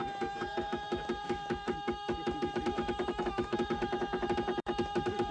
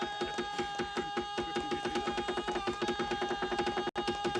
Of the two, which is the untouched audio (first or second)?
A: second